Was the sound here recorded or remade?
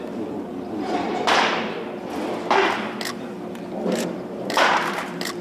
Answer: recorded